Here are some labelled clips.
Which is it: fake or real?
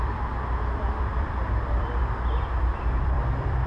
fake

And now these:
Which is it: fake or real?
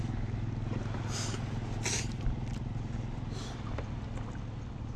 real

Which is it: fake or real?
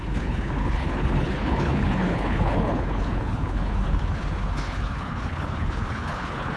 fake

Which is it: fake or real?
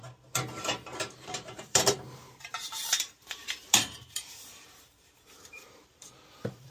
fake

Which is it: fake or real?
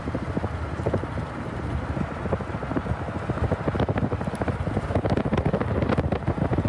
real